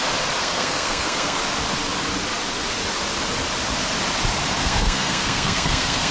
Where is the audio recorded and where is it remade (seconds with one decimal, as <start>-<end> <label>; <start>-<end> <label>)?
0.0-0.4 recorded; 0.4-1.4 remade; 1.4-4.6 recorded; 4.6-6.1 remade

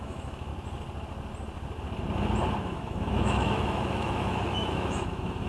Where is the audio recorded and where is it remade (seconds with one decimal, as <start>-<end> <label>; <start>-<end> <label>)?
0.0-0.5 remade; 0.5-2.6 recorded; 2.6-5.5 remade

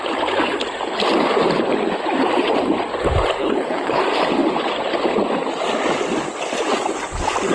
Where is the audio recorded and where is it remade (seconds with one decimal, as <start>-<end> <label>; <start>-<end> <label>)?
0.0-3.4 recorded; 3.4-4.0 remade; 4.0-7.5 recorded

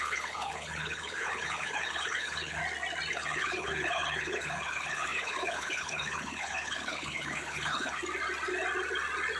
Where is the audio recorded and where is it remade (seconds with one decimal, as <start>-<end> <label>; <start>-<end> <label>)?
0.0-2.6 remade; 2.6-3.1 recorded; 3.1-8.0 remade; 8.0-9.4 recorded

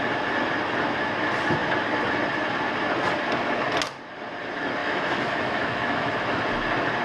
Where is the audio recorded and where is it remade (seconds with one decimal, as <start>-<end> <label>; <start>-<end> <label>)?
0.0-4.8 recorded; 4.8-6.4 remade; 6.4-7.0 recorded

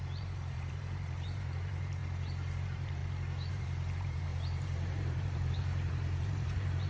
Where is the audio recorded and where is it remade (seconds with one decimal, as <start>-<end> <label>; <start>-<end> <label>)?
0.0-2.0 remade; 2.0-2.6 recorded; 2.6-3.0 remade; 3.0-3.5 recorded; 3.5-6.9 remade

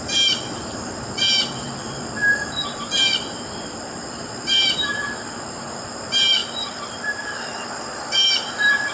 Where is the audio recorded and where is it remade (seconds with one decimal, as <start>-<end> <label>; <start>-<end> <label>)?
0.0-8.9 remade